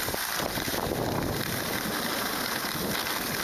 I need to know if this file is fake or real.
real